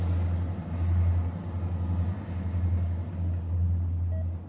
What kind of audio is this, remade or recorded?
recorded